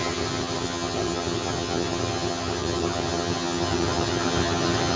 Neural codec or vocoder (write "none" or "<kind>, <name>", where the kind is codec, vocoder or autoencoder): vocoder, HiFi-GAN